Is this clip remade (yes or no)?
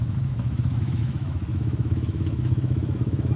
yes